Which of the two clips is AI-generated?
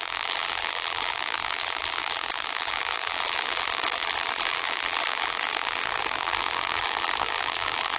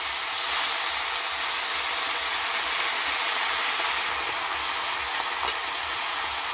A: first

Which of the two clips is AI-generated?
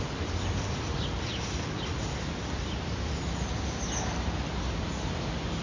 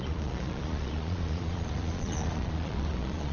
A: second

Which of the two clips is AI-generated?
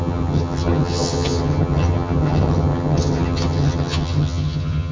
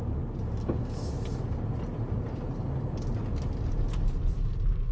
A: first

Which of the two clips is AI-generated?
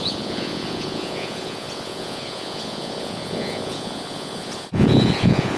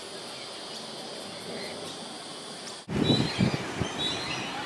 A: first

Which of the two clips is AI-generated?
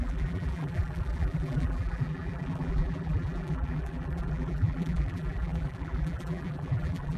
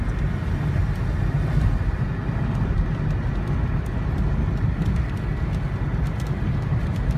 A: first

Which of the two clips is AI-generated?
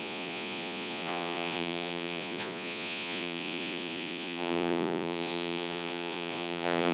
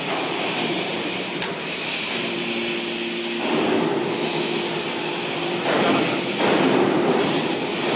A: first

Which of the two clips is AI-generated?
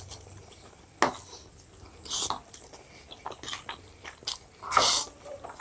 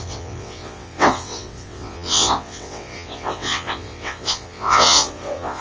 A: second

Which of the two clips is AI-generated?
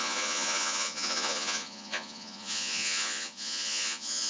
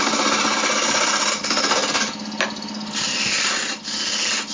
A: first